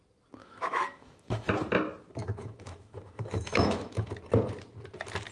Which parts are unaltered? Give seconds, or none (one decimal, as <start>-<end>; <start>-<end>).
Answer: 0.0-0.4; 1.5-2.2; 4.1-5.3